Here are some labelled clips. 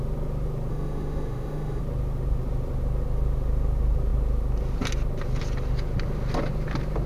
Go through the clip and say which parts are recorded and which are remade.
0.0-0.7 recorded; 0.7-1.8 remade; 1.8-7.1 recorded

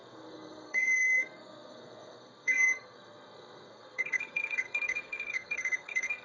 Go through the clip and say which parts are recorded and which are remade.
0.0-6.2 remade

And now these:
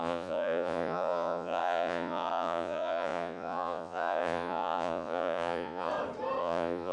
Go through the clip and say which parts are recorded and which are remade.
0.0-5.9 remade; 5.9-6.4 recorded; 6.4-6.9 remade